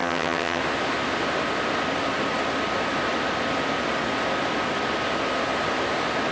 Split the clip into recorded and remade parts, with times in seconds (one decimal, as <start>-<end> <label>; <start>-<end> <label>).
0.0-0.6 remade; 0.6-6.3 recorded